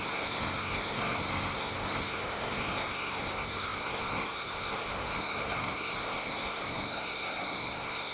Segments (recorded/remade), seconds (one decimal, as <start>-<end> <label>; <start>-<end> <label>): 0.0-8.1 remade